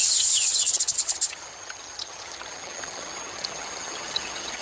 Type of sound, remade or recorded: remade